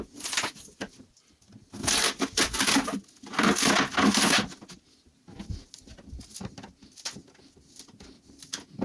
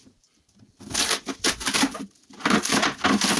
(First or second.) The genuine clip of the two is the first